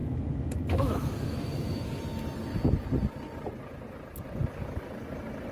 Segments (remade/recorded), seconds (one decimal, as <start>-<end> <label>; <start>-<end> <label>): 0.0-2.0 remade; 2.0-5.5 recorded